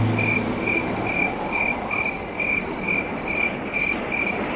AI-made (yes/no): no